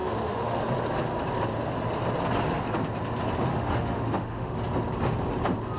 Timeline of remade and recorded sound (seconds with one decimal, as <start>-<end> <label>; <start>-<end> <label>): 0.0-0.6 remade; 0.6-3.5 recorded; 3.5-4.6 remade; 4.6-5.8 recorded